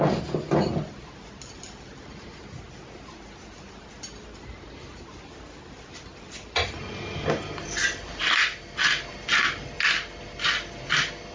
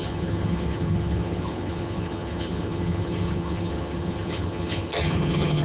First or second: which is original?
first